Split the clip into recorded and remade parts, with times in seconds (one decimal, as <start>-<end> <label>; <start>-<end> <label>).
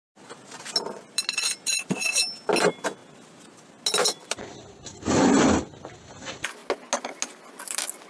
0.0-8.1 recorded